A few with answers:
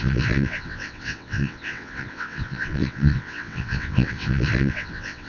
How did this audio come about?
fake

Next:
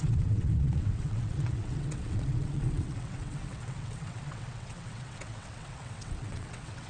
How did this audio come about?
fake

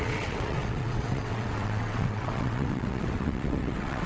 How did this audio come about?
fake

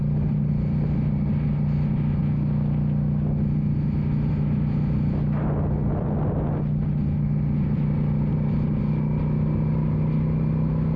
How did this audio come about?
real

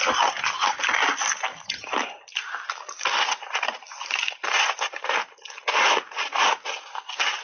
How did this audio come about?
real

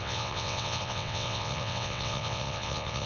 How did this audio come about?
fake